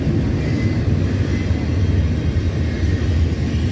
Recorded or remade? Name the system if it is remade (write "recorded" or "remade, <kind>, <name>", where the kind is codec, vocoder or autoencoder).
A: recorded